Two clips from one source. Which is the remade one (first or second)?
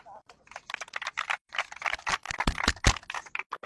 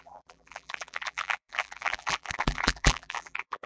second